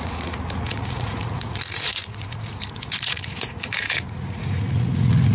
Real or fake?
fake